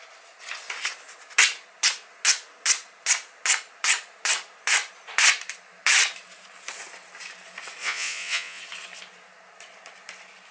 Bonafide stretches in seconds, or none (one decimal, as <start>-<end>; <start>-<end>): 0.0-7.8; 8.6-10.5